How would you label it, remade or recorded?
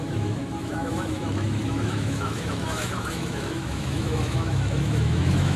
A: remade